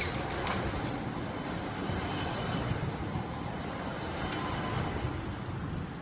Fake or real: fake